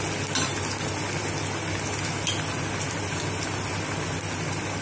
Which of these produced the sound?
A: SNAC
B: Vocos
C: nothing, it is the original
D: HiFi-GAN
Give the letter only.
C